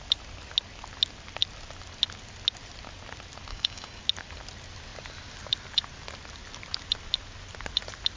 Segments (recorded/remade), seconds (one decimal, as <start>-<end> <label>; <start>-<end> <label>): 0.0-3.5 recorded; 3.5-4.0 remade; 4.0-8.2 recorded